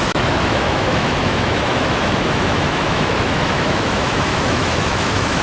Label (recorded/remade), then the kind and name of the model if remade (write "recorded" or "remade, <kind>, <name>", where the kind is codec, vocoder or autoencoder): remade, autoencoder, DAC-VAE